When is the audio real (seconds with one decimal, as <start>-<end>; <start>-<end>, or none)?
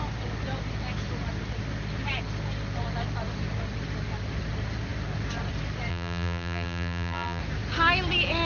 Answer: 0.0-5.9; 7.4-8.4